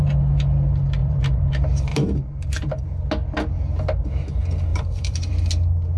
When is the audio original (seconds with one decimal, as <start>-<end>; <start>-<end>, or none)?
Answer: 0.0-1.0; 1.5-1.9; 2.8-4.7; 5.3-6.0